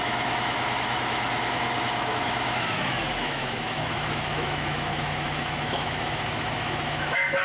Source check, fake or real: fake